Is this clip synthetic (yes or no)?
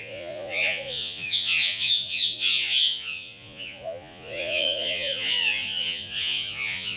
yes